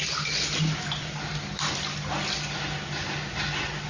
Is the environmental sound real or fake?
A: real